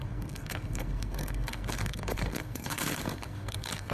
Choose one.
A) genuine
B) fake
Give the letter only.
B